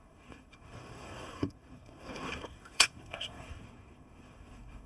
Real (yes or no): no